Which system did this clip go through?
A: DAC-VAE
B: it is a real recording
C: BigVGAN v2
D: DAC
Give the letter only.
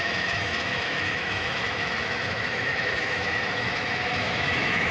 A